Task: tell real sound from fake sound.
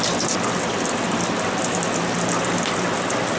real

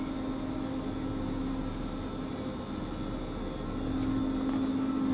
real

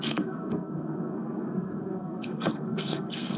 fake